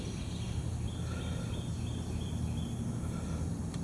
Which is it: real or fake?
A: real